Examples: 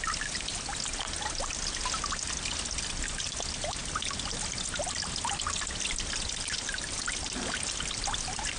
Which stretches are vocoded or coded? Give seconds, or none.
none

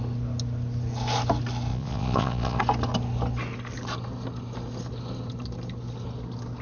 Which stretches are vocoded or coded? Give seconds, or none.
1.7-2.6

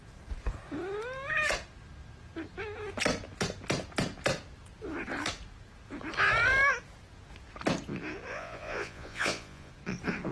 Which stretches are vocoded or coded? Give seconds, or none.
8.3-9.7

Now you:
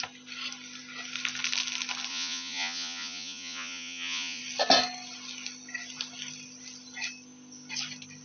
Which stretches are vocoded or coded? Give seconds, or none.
2.1-4.4